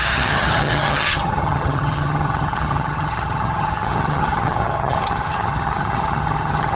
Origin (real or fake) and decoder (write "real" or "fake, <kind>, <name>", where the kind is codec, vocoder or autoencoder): fake, vocoder, HiFi-GAN